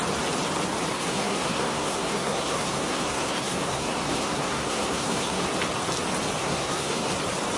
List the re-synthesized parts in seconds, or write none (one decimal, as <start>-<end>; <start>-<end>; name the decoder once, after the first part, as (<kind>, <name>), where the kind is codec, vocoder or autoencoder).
0.9-5.5 (codec, SNAC); 6.4-7.1